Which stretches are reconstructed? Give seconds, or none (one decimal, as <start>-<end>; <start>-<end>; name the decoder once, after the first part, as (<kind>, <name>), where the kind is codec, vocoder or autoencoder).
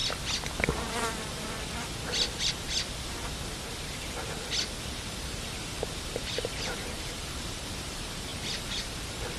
4.8-9.4 (vocoder, BigVGAN v2)